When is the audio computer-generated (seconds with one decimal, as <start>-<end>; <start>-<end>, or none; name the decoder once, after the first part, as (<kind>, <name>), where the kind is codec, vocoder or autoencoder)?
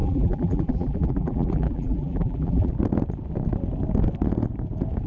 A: 0.0-2.7 (vocoder, BigVGAN v2)